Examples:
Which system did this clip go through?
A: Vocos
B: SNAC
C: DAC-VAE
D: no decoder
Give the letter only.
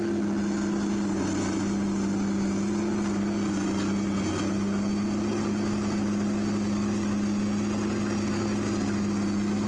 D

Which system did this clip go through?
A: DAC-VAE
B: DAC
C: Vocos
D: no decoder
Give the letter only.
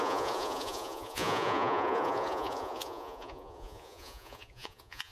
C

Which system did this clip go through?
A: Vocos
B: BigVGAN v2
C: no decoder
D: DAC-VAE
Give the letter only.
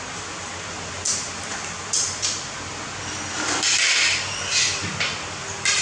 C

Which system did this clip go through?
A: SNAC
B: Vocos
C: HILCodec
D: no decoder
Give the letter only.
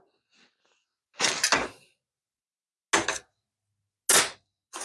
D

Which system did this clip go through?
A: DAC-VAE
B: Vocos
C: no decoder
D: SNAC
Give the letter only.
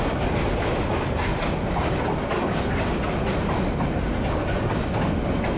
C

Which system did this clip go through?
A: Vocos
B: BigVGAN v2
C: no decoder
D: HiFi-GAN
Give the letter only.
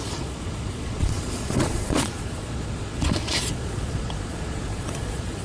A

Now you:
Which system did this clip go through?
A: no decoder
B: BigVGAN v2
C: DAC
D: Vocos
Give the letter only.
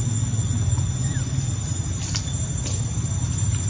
A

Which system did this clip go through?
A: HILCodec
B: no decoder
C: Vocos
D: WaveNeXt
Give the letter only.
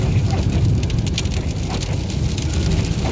B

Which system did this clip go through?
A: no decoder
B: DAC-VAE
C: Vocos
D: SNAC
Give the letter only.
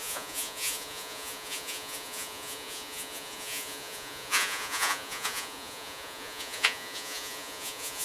C